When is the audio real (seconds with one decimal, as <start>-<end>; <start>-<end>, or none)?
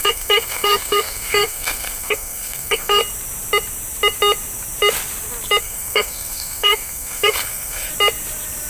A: 3.0-5.6; 7.9-8.7